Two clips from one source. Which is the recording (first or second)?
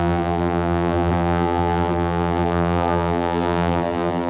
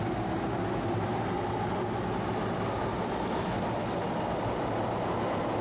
second